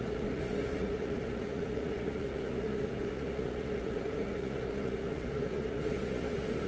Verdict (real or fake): fake